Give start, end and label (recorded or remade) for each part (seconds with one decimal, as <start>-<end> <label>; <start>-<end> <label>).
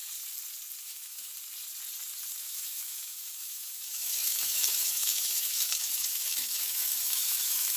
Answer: 0.0-0.8 recorded; 0.8-1.3 remade; 1.3-2.4 recorded; 2.4-7.8 remade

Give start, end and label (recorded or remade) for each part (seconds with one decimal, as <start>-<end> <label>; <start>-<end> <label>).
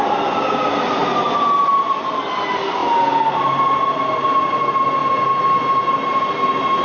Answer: 0.0-6.8 recorded